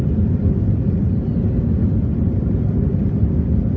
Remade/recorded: recorded